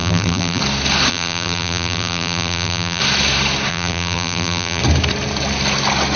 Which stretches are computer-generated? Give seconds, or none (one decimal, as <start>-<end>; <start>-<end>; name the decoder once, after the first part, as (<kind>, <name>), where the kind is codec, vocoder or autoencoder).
0.0-0.6 (vocoder, BigVGAN v2); 1.1-3.0; 3.7-4.8